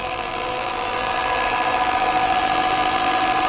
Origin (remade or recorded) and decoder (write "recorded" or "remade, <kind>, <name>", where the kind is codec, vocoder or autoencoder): remade, vocoder, BigVGAN v2